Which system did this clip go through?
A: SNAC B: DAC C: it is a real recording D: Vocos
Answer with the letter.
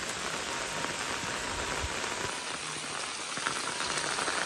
C